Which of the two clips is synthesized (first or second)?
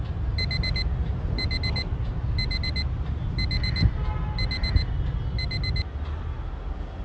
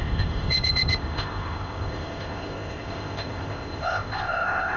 second